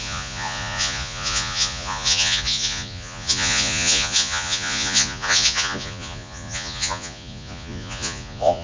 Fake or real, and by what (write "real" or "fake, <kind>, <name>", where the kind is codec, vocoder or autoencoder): fake, vocoder, Vocos